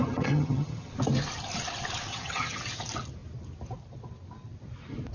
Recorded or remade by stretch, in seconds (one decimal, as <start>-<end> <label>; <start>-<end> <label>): 0.0-0.9 remade; 0.9-2.1 recorded; 2.1-2.6 remade; 2.6-5.1 recorded